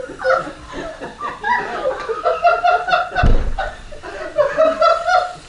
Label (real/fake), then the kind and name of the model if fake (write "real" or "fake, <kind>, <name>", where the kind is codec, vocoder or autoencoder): fake, vocoder, BigVGAN v2